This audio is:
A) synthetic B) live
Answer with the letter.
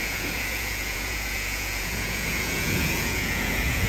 A